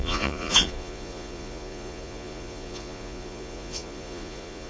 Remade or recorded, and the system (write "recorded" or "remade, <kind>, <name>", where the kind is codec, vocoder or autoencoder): remade, vocoder, Vocos